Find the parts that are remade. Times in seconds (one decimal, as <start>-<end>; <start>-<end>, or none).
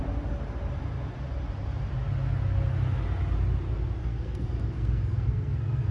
4.0-5.9